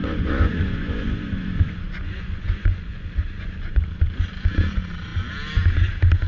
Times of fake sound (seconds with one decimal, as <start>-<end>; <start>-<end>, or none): 0.0-3.8